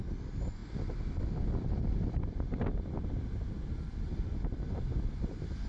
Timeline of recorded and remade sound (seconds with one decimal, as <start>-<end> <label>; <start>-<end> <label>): 0.0-5.7 remade